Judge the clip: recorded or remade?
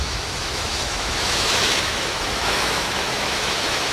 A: remade